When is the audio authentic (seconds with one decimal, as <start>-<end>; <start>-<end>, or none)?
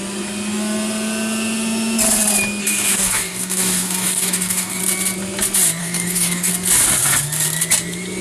0.0-2.6; 4.8-5.8; 6.5-8.2